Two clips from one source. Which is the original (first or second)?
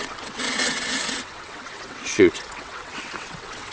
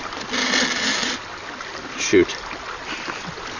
second